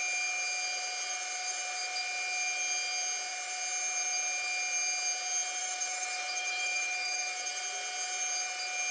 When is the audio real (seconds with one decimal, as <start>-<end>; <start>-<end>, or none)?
0.0-5.6; 7.6-8.9